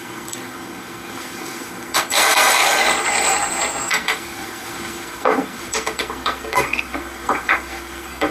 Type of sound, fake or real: fake